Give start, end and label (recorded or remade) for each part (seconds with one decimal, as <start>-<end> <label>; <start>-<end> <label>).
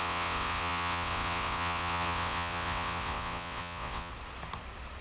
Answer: 0.0-4.1 remade; 4.1-5.0 recorded